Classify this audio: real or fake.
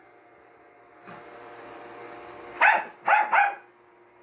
real